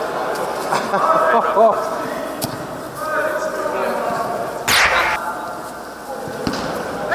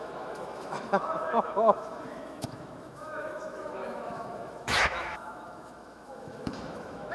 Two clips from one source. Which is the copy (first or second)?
second